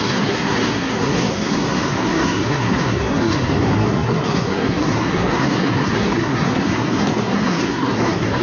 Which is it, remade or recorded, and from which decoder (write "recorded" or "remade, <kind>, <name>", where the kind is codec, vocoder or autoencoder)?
remade, codec, SNAC